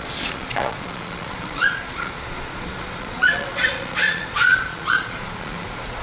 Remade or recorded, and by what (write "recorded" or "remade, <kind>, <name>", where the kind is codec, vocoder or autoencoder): remade, vocoder, Vocos